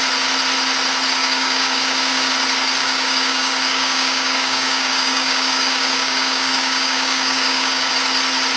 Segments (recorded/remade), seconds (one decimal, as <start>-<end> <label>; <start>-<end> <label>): 0.0-1.2 recorded; 1.2-2.3 remade; 2.3-2.8 recorded; 2.8-7.9 remade; 7.9-8.6 recorded